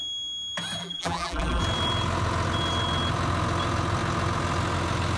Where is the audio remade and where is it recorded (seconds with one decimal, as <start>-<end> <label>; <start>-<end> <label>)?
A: 0.0-0.8 recorded; 0.8-1.6 remade; 1.6-5.2 recorded